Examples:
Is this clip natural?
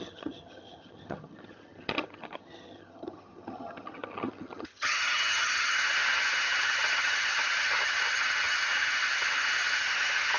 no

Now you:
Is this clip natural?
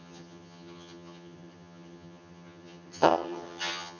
no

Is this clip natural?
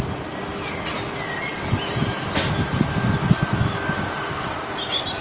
yes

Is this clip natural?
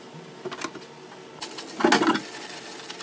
yes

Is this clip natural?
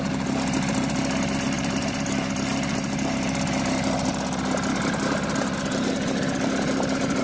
yes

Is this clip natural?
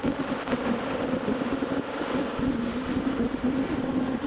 yes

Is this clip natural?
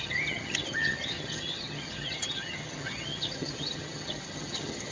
no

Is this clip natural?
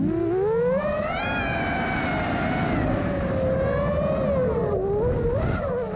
yes